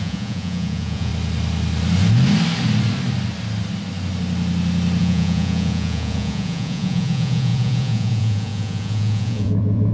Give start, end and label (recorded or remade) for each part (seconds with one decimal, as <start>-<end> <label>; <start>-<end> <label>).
0.0-1.1 remade; 1.1-5.0 recorded; 5.0-9.9 remade